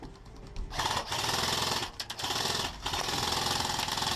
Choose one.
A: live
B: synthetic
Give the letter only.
B